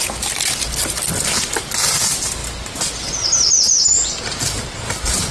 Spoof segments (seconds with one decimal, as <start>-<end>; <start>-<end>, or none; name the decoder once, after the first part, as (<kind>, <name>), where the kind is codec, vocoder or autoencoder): none